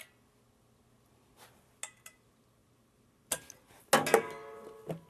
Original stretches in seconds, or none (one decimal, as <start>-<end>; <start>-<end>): 0.0-5.1